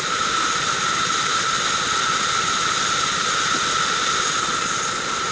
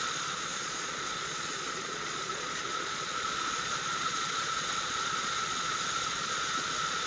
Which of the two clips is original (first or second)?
first